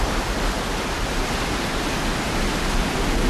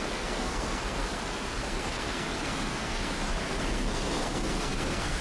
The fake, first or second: second